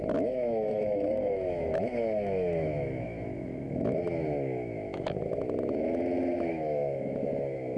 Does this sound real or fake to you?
fake